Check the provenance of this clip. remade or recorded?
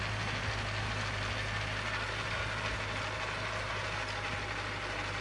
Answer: recorded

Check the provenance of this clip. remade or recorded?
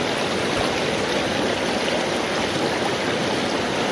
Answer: recorded